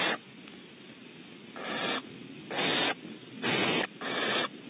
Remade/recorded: recorded